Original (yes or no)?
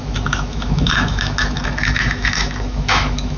no